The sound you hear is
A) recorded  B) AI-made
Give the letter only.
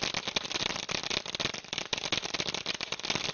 A